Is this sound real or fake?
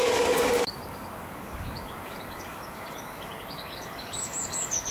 fake